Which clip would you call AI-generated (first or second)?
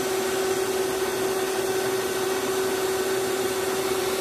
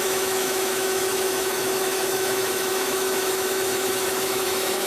second